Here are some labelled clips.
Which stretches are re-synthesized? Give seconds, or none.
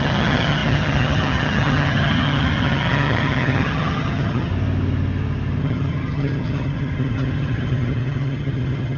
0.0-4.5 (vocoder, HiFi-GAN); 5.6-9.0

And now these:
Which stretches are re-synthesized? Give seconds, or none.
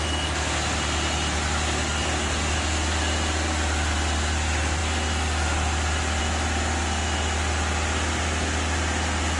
none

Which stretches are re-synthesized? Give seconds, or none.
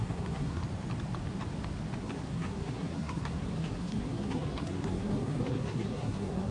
0.0-0.6 (codec, SNAC); 2.0-6.5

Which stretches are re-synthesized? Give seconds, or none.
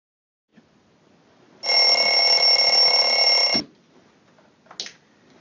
none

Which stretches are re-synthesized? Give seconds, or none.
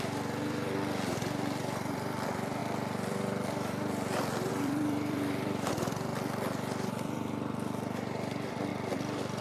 0.0-6.1 (vocoder, BigVGAN v2); 6.9-8.7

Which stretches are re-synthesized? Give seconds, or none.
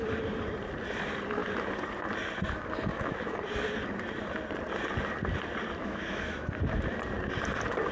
2.9-3.4 (autoencoder, DAC-VAE); 5.8-6.5